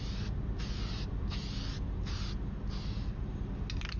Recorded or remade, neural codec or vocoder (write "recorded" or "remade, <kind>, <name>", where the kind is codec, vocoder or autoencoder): recorded